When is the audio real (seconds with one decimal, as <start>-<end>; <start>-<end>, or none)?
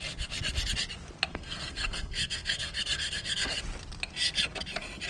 0.0-1.3; 3.6-5.1